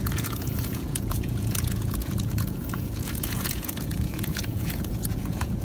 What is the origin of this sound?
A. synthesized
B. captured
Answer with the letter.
A